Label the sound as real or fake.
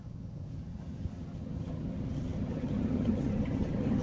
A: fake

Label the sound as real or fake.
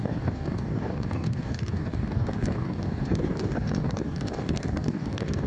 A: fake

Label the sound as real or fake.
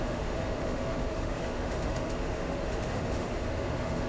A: fake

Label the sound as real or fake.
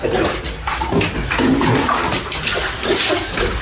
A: real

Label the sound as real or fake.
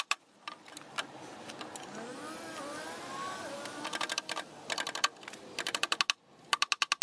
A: real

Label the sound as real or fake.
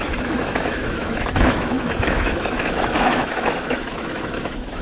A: fake